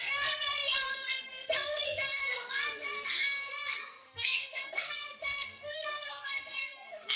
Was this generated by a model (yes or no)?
yes